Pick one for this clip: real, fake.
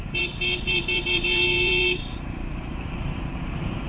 fake